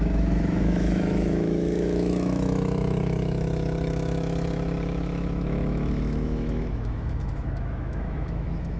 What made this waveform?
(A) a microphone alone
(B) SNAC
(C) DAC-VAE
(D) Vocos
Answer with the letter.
C